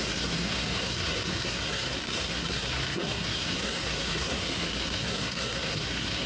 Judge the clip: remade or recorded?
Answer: remade